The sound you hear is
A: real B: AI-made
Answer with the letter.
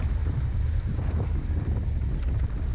B